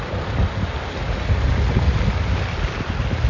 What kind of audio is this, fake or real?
real